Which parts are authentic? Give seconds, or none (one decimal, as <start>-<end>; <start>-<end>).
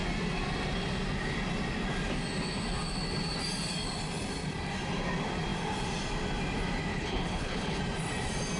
0.0-6.9; 7.8-8.6